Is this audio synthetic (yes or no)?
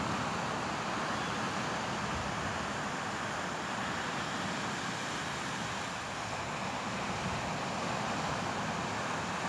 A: no